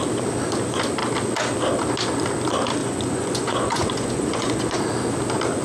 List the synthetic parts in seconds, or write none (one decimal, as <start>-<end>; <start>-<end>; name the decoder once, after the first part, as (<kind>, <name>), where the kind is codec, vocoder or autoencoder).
2.8-4.8 (vocoder, Vocos)